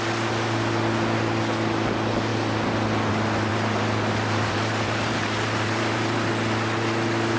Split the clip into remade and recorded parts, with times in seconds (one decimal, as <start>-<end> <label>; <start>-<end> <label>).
0.0-3.5 recorded; 3.5-6.3 remade; 6.3-7.4 recorded